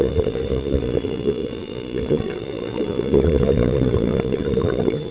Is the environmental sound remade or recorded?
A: remade